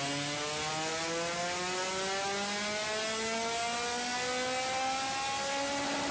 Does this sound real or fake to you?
real